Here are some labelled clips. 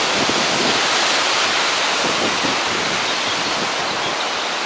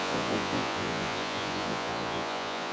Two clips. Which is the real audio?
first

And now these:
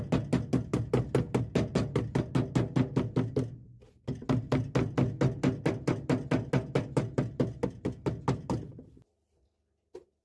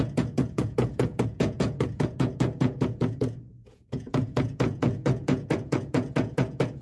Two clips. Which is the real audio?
first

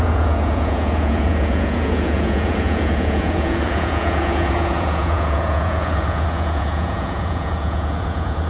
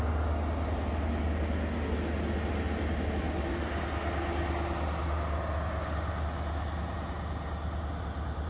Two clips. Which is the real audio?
second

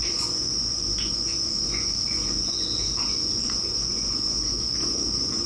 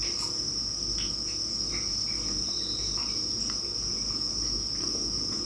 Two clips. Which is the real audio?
second